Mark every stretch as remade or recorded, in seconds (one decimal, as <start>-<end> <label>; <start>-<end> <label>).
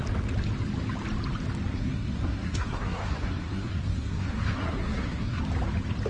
0.0-1.7 recorded; 1.7-5.4 remade; 5.4-6.1 recorded